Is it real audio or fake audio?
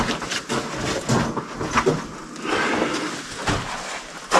real